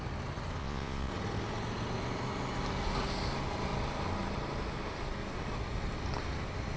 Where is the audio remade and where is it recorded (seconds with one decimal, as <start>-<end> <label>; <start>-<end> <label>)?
0.0-0.6 recorded; 0.6-1.1 remade; 1.1-6.8 recorded